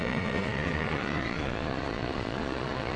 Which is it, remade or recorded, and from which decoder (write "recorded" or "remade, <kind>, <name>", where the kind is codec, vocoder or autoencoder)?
remade, vocoder, Vocos